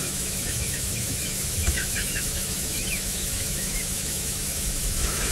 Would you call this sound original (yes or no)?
no